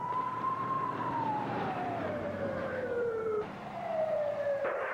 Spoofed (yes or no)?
yes